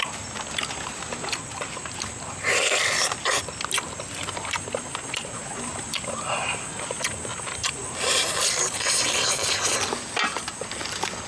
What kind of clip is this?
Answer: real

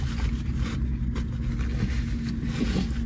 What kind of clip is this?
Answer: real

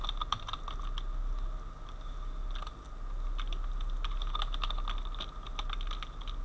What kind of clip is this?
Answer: real